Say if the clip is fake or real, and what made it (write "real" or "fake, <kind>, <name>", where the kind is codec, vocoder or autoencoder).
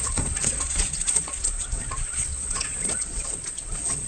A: fake, vocoder, Vocos